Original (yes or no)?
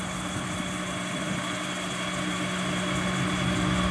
yes